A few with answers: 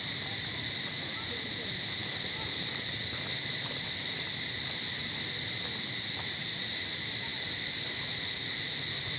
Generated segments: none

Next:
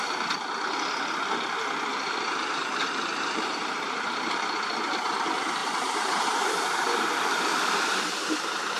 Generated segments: 1.9-4.4 (vocoder, BigVGAN v2); 5.6-8.1

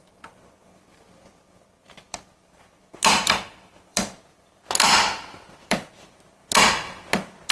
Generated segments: 0.0-6.4 (vocoder, BigVGAN v2)